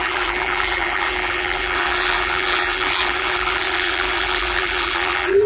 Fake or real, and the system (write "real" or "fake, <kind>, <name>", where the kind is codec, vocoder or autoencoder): fake, vocoder, BigVGAN v2